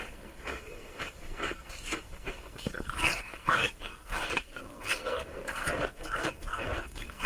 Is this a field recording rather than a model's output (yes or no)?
no